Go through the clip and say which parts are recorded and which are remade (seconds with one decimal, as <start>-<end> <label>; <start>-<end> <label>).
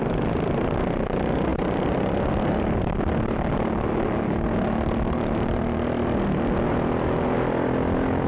0.0-8.3 recorded